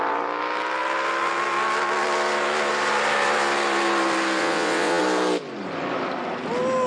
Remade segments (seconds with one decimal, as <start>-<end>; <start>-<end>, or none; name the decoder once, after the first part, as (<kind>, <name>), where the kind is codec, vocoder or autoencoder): 4.4-5.0 (vocoder, WaveNeXt)